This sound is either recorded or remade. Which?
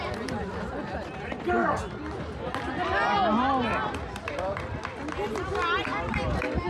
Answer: recorded